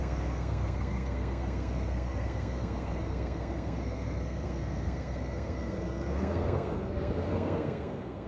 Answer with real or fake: fake